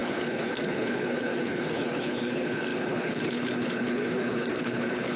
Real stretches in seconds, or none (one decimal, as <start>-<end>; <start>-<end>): none